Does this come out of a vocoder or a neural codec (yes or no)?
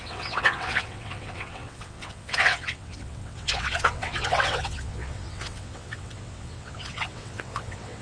yes